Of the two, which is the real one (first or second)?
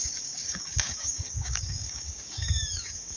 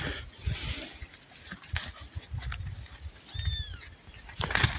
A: second